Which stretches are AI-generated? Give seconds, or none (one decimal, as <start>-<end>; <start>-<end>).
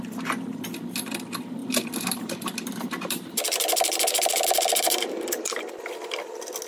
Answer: 1.6-5.6